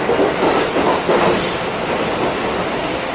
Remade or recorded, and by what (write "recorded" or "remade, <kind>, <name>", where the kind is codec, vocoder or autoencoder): recorded